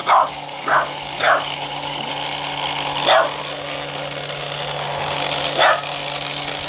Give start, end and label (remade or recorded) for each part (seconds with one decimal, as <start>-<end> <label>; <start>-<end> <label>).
0.0-2.1 remade; 2.1-6.7 recorded